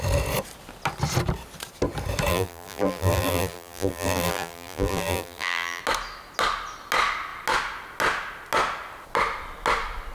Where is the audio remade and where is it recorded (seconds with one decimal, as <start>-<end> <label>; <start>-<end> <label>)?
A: 0.0-2.3 recorded; 2.3-5.8 remade; 5.8-10.1 recorded